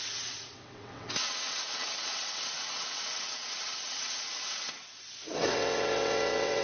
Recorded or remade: remade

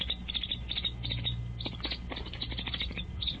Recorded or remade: recorded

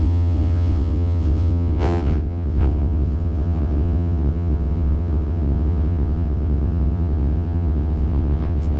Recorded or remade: remade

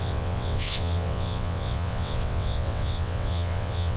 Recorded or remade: remade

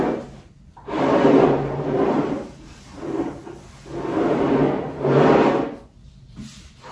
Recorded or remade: recorded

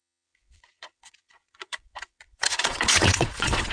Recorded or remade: remade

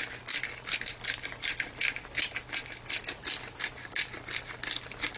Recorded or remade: recorded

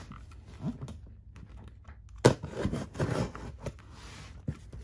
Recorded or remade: recorded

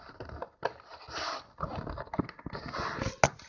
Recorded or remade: recorded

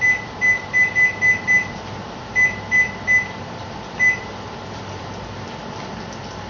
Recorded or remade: recorded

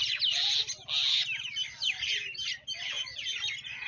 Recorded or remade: recorded